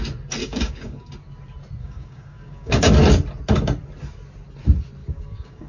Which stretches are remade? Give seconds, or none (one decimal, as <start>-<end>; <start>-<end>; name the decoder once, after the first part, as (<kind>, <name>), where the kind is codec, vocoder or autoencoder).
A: 0.4-1.1 (codec, DAC); 1.8-2.9; 5.0-5.7